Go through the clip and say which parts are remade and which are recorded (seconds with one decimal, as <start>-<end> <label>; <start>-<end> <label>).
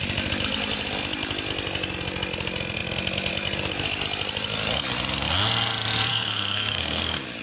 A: 0.0-6.1 recorded; 6.1-7.0 remade; 7.0-7.4 recorded